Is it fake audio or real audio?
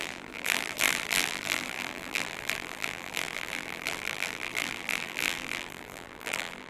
fake